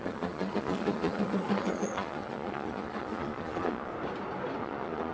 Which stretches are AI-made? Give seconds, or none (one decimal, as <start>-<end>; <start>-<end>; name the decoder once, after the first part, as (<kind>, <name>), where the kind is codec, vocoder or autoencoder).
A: 0.0-3.9 (vocoder, Vocos); 4.6-5.1